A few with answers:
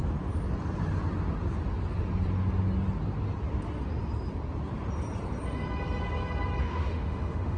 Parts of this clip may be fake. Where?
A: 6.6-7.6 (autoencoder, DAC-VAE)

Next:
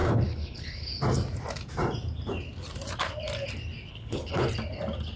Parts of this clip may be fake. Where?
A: 0.0-0.9 (codec, HILCodec); 3.9-4.5

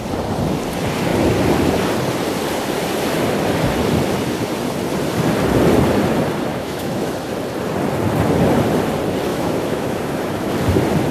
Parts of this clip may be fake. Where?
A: 6.5-7.1 (autoencoder, DAC-VAE); 9.3-10.5

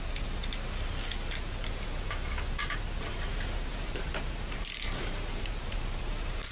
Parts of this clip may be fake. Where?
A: 2.6-6.5 (vocoder, BigVGAN v2)

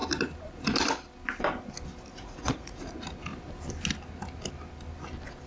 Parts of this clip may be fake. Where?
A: 2.1-2.9 (vocoder, Vocos)

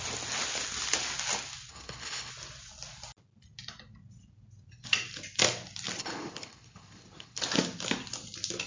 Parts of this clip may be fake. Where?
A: 1.7-2.3 (codec, HILCodec); 6.0-7.4